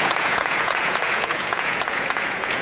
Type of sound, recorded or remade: remade